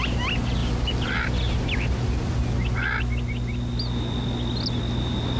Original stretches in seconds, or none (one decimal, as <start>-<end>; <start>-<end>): 0.0-0.6; 1.3-5.4